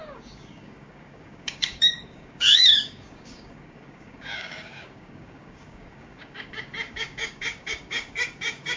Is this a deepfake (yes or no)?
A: yes